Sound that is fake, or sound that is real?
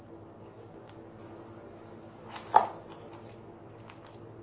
real